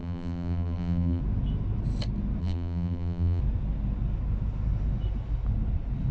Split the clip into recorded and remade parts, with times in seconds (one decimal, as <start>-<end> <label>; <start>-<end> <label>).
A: 0.0-1.2 remade; 1.2-2.4 recorded; 2.4-3.4 remade; 3.4-6.1 recorded